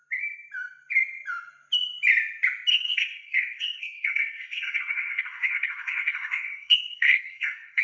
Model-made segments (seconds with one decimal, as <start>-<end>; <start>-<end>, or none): 2.7-7.8